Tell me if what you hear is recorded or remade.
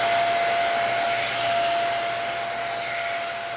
recorded